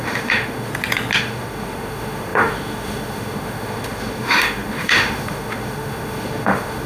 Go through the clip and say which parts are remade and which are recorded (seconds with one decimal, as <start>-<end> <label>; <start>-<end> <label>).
0.0-0.7 remade; 0.7-1.2 recorded; 1.2-6.9 remade

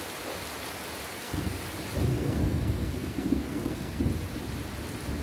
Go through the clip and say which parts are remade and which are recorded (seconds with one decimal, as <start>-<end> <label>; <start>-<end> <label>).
0.0-1.1 recorded; 1.1-1.6 remade; 1.6-2.1 recorded; 2.1-4.0 remade; 4.0-5.2 recorded

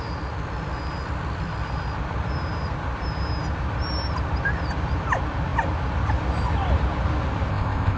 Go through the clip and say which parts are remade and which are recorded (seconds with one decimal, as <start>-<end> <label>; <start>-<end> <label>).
0.0-7.5 recorded; 7.5-8.0 remade

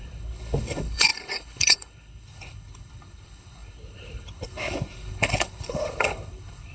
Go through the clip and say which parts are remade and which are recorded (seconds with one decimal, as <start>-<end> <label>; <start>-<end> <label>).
0.0-6.7 remade